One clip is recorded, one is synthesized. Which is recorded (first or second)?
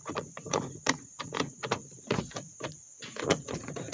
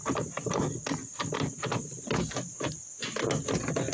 second